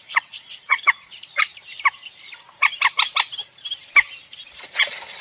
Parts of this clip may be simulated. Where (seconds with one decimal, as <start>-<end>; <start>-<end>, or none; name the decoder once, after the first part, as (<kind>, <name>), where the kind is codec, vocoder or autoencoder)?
0.0-1.5 (vocoder, Vocos); 4.5-5.2